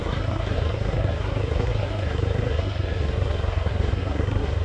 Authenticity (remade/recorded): remade